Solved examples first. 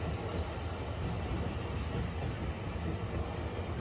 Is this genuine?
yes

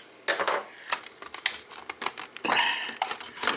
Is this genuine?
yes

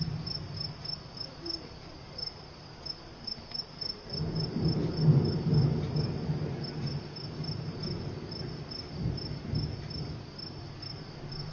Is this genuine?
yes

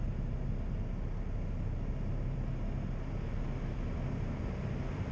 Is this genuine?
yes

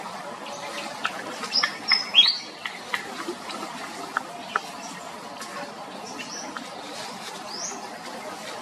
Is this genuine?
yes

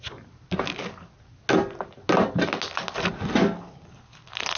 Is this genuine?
yes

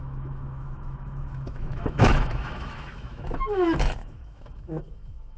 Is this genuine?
no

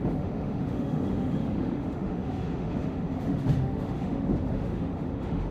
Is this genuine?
no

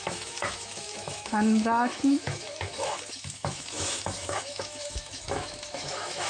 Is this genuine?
no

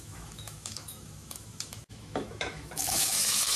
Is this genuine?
no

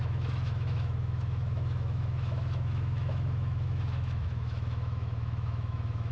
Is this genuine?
no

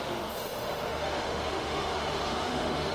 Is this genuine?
no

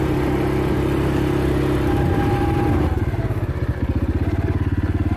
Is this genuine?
yes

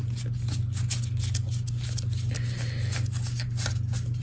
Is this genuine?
yes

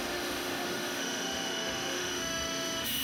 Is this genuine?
no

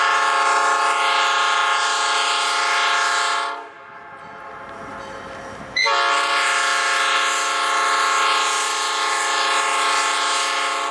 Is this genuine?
yes